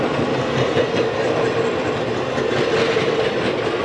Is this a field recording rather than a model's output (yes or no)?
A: yes